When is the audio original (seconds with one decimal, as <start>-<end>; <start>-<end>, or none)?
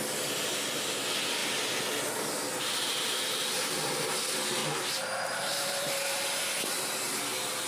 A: 0.0-4.6; 6.2-7.7